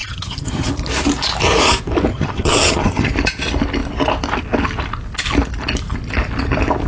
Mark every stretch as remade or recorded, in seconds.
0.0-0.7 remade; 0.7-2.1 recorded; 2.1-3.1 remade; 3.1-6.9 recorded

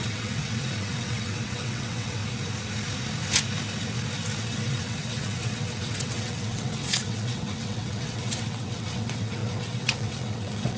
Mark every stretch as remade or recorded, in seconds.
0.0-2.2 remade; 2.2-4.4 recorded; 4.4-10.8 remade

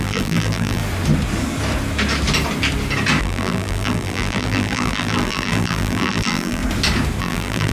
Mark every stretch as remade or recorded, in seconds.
0.0-0.8 remade; 0.8-3.2 recorded; 3.2-6.6 remade; 6.6-7.2 recorded; 7.2-7.7 remade

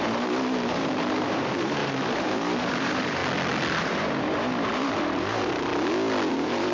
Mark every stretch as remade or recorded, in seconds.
0.0-3.2 remade; 3.2-3.8 recorded; 3.8-5.7 remade; 5.7-6.3 recorded; 6.3-6.7 remade

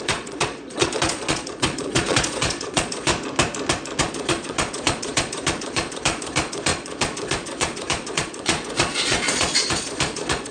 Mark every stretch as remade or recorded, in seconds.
0.0-3.1 remade; 3.1-4.0 recorded; 4.0-10.5 remade